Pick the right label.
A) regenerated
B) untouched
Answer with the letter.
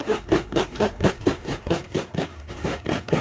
A